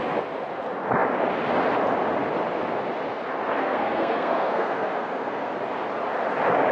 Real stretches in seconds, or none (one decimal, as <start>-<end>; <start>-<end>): 0.0-3.6; 5.5-6.7